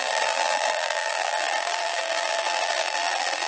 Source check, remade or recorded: remade